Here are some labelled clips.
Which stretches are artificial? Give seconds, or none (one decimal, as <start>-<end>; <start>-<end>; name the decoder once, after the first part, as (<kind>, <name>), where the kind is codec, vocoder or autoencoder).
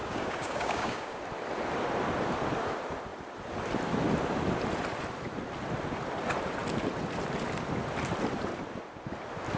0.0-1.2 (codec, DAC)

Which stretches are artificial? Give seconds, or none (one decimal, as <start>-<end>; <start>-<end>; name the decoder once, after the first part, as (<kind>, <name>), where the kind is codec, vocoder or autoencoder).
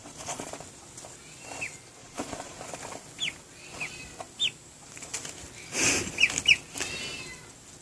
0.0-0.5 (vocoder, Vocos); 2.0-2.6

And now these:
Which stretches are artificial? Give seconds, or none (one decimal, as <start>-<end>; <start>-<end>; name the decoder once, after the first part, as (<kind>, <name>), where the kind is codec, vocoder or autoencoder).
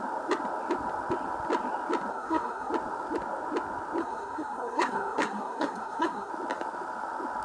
2.1-2.7 (codec, SNAC); 4.0-6.3